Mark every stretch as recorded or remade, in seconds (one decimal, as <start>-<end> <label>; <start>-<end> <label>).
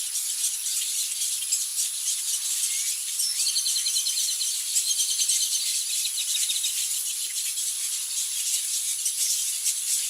0.0-10.1 recorded